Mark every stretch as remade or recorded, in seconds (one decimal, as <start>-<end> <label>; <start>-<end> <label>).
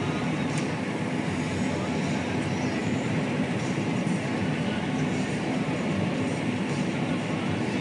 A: 0.0-0.8 remade; 0.8-2.8 recorded; 2.8-7.1 remade; 7.1-7.8 recorded